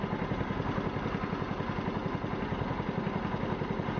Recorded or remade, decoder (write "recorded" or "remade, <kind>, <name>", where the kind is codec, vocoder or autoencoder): recorded